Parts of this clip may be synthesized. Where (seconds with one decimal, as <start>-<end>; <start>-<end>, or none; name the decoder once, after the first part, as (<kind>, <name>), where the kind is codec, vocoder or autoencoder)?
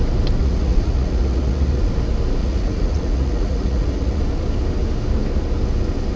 0.4-1.9 (vocoder, Vocos); 2.4-4.2